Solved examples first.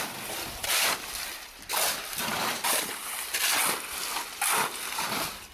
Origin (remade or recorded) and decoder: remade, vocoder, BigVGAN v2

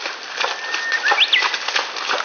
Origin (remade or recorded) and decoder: recorded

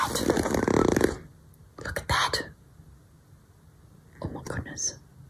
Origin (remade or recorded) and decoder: recorded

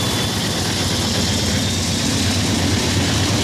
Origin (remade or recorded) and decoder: remade, vocoder, BigVGAN v2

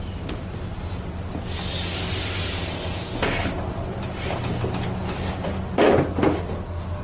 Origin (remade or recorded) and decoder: recorded